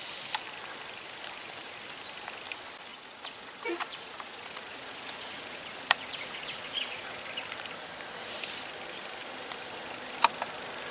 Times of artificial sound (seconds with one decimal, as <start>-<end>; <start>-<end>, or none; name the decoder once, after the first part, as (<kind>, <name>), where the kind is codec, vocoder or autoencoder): 2.9-7.2 (vocoder, Vocos)